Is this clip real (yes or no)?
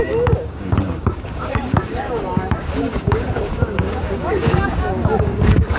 no